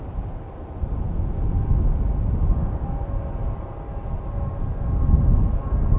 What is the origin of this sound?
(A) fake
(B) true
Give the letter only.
B